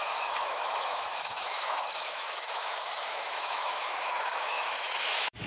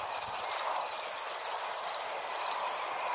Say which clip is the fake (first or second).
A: first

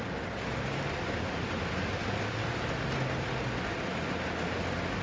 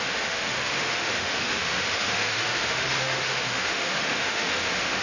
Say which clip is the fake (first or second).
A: second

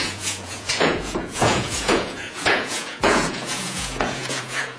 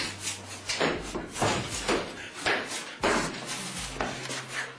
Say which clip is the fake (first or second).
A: first